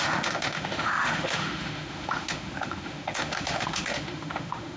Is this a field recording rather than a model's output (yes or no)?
no